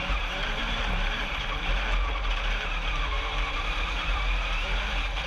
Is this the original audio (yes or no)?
no